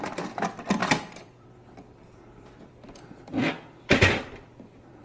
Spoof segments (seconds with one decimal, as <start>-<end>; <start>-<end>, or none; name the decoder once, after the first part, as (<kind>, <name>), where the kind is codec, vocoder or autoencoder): 0.0-5.0 (vocoder, BigVGAN v2)